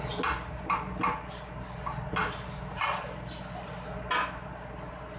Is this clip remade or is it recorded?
recorded